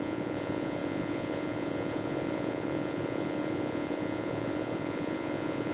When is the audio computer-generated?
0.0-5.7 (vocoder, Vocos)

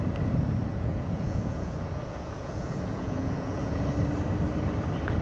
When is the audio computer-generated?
0.7-3.8 (vocoder, Vocos)

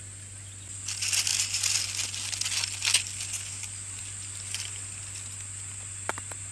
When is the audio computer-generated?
none

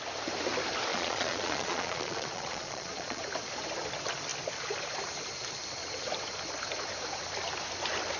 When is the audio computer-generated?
0.9-3.2 (vocoder, Vocos)

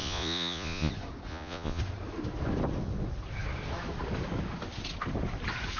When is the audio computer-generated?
0.0-0.9 (vocoder, Vocos); 1.3-1.8

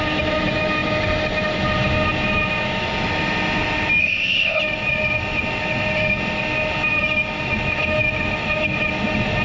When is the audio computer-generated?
4.0-4.6 (codec, ZipCodec)